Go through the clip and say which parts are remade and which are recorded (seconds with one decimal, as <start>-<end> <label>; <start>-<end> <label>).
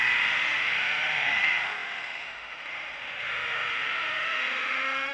0.0-5.1 remade